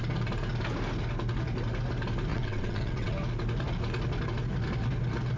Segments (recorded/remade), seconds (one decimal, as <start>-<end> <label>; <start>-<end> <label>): 0.0-2.3 recorded; 2.3-3.1 remade; 3.1-5.4 recorded